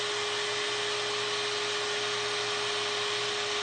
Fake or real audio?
real